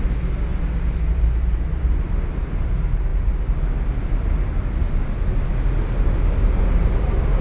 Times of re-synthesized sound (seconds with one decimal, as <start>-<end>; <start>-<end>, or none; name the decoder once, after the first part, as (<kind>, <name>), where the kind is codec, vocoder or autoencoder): 0.5-1.7 (vocoder, BigVGAN v2)